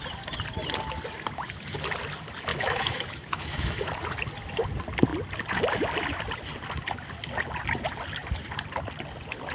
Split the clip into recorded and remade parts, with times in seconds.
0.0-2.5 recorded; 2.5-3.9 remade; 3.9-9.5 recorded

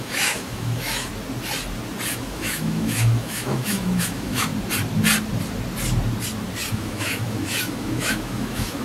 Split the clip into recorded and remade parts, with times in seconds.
0.0-1.1 remade; 1.1-2.1 recorded; 2.1-4.5 remade; 4.5-6.7 recorded; 6.7-8.8 remade